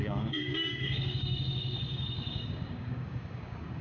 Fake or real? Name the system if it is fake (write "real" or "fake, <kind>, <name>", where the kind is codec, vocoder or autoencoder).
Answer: fake, codec, DAC